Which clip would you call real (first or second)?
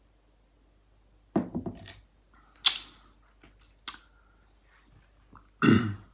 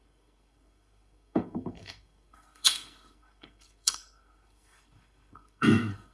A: first